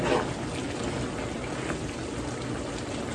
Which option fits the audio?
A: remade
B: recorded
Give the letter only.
B